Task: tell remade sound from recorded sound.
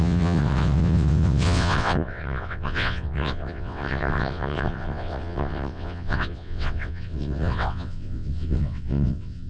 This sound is remade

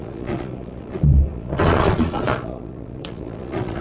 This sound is remade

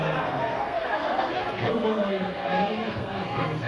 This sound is remade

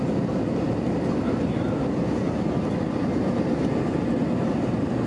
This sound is recorded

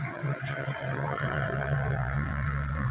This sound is remade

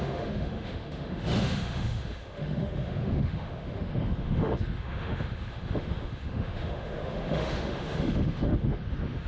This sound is remade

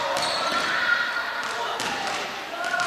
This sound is recorded